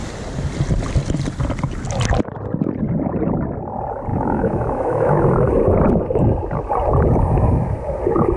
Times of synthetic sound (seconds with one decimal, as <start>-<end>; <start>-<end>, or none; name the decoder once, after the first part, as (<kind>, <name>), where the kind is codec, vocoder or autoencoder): 4.1-5.2 (autoencoder, DAC-VAE)